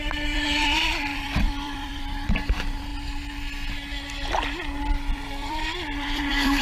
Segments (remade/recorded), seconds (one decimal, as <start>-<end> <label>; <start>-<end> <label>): 0.0-2.9 remade; 2.9-4.8 recorded; 4.8-6.6 remade